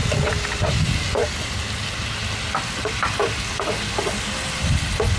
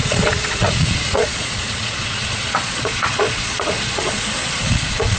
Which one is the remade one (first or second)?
second